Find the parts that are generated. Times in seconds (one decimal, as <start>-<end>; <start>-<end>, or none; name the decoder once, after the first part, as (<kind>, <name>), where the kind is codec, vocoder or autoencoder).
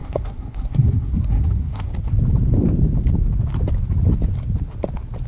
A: 0.0-1.9 (codec, SNAC)